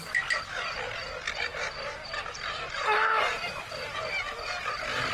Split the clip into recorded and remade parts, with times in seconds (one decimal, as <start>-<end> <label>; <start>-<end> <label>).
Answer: 0.0-1.5 recorded; 1.5-4.6 remade; 4.6-5.1 recorded